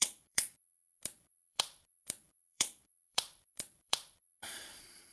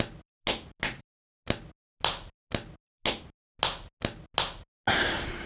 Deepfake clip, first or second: first